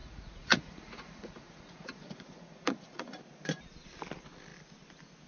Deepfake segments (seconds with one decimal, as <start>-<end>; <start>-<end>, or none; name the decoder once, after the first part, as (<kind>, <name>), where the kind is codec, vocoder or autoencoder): 0.0-3.2 (vocoder, Vocos)